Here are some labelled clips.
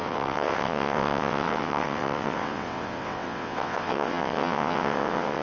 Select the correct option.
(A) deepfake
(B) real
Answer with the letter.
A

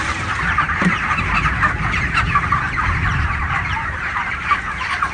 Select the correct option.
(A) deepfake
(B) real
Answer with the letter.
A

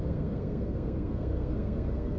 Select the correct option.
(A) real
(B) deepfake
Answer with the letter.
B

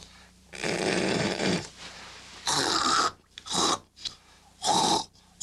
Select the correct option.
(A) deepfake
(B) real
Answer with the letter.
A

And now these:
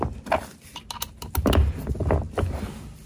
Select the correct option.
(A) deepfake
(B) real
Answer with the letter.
B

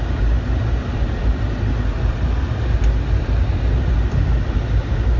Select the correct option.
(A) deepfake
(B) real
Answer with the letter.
B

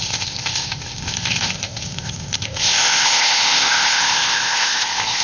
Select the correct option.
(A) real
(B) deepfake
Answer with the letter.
B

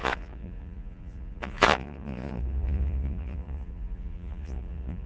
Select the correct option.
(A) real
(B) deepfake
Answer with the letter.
B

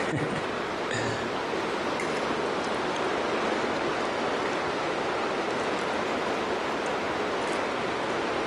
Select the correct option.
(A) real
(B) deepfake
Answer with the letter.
A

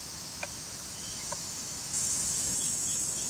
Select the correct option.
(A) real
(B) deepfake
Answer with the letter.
B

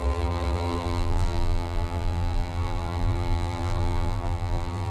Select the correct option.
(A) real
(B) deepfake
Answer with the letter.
B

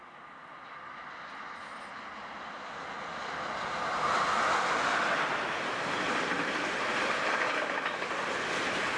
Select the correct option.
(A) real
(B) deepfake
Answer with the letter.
A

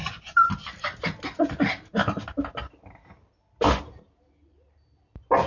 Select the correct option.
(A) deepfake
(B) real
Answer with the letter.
B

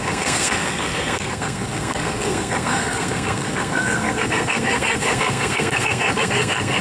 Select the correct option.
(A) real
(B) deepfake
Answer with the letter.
B